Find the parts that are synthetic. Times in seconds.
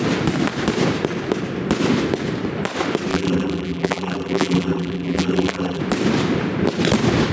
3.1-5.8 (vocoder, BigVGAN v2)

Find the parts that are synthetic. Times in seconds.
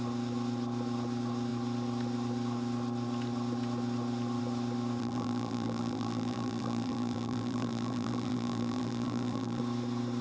5.0-9.6 (vocoder, BigVGAN v2)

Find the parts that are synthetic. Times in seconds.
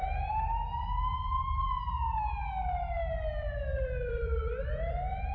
3.7-4.6 (vocoder, BigVGAN v2)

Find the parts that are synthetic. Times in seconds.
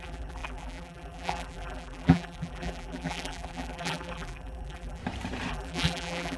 0.0-5.0 (vocoder, BigVGAN v2); 5.5-6.4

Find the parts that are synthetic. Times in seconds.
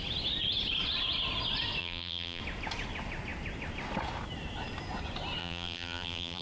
1.8-2.4 (vocoder, BigVGAN v2); 5.4-6.4